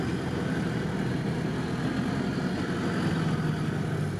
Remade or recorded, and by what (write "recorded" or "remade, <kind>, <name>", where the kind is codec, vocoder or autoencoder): recorded